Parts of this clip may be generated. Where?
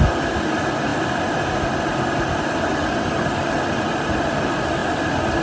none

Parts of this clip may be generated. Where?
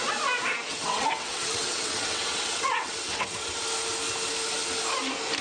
0.7-3.6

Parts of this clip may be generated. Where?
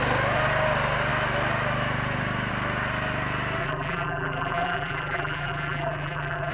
3.6-6.5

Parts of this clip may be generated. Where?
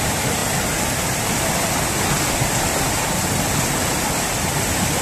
none